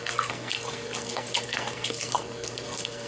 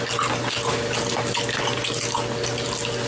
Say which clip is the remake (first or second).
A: first